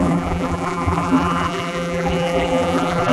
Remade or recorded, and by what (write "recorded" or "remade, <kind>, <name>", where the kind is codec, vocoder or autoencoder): remade, vocoder, BigVGAN v2